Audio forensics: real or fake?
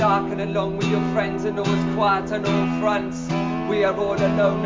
real